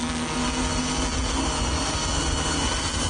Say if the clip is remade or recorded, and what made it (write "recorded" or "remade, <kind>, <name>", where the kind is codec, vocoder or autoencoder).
recorded